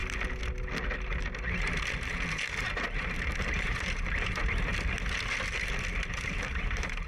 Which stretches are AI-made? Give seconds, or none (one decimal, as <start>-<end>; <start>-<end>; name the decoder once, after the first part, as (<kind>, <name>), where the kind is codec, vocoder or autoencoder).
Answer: 3.4-4.7 (vocoder, BigVGAN v2); 6.1-7.1